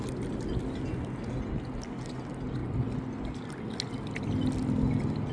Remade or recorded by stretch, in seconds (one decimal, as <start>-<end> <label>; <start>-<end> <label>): 0.0-5.3 recorded